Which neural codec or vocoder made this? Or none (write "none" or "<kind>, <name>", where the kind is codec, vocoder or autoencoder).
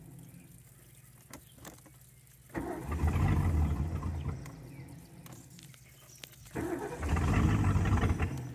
none